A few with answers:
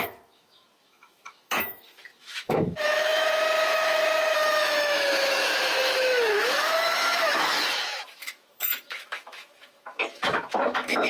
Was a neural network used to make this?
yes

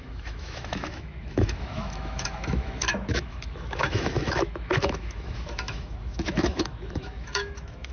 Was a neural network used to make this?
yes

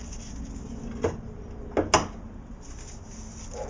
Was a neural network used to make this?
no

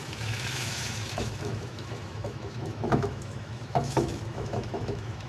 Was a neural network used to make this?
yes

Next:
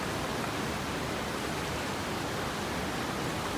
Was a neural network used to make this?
no